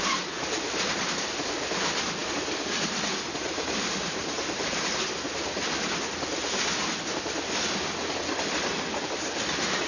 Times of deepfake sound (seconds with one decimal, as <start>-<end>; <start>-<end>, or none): 3.4-4.9